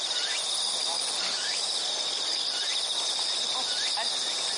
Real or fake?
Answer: real